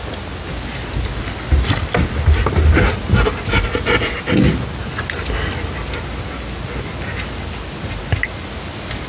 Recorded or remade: recorded